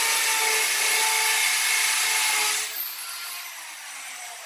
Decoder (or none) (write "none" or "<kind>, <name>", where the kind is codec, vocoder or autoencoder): none